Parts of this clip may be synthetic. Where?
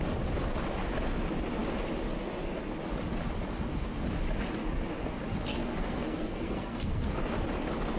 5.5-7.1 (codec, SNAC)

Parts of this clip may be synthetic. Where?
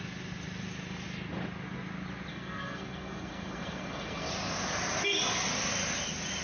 2.3-4.3 (codec, SNAC)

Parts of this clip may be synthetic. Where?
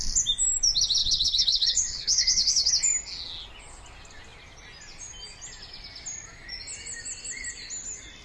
1.0-2.7 (codec, HILCodec)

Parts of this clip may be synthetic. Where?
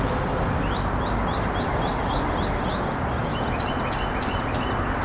none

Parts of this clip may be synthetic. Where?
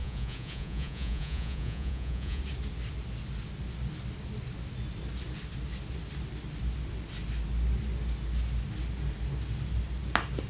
0.0-2.4 (vocoder, Vocos)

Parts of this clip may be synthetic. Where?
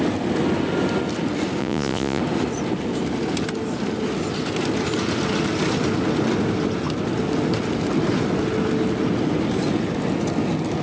1.6-2.2 (vocoder, Vocos)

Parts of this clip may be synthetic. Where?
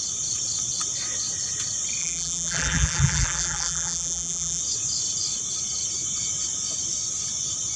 2.0-4.6 (vocoder, BigVGAN v2)